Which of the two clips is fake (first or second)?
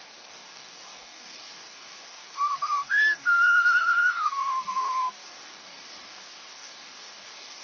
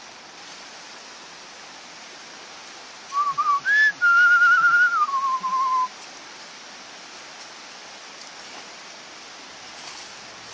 first